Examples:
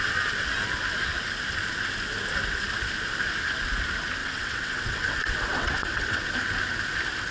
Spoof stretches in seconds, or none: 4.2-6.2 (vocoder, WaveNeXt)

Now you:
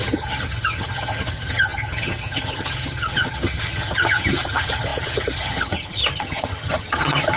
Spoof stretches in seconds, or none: 0.0-7.4 (vocoder, HiFi-GAN)

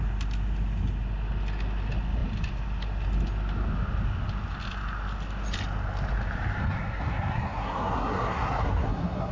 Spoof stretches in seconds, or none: 6.6-9.3 (codec, SNAC)